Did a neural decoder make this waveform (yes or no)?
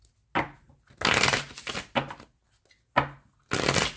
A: no